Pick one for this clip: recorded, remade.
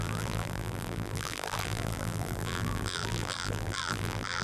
remade